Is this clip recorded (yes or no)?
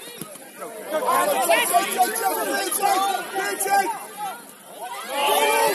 yes